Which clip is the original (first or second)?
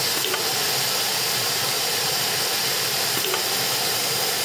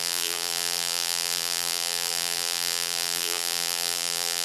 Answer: first